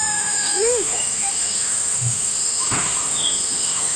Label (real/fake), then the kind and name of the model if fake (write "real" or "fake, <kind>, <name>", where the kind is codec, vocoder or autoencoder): fake, autoencoder, DAC-VAE